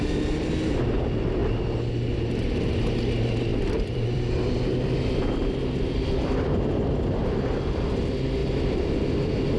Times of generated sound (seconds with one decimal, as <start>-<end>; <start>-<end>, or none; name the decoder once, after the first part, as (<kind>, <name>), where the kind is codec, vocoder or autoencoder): 3.5-6.7 (vocoder, BigVGAN v2); 8.4-8.9